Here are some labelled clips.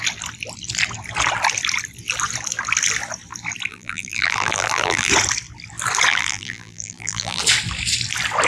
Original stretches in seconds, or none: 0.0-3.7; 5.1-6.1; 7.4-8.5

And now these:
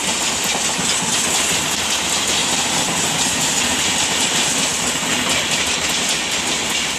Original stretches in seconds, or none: 0.0-2.4; 3.2-7.0